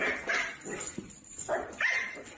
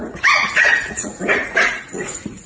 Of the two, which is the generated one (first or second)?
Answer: second